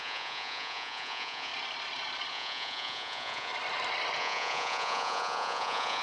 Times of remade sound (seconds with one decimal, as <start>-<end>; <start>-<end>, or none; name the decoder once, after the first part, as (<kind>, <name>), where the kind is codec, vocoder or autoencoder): 0.0-1.5 (vocoder, Vocos); 2.3-3.5; 4.2-6.0